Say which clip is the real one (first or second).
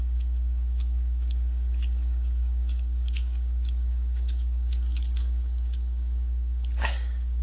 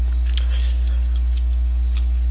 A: second